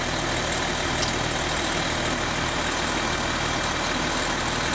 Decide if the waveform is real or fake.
real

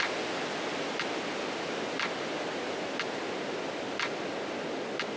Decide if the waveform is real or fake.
real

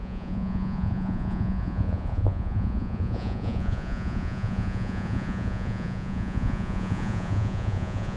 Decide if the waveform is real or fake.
fake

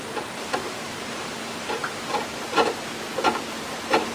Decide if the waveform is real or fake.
fake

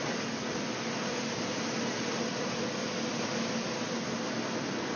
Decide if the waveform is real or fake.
real